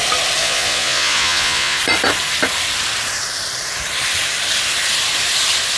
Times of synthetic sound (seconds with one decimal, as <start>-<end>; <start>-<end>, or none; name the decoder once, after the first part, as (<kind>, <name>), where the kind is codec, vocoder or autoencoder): 0.4-1.8 (vocoder, Vocos)